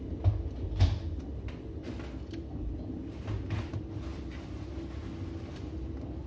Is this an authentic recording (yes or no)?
yes